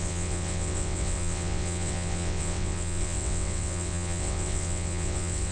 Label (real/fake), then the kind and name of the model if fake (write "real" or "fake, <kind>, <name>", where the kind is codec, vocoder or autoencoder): fake, vocoder, WaveNeXt